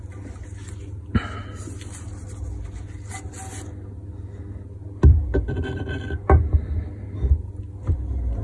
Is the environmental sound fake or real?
real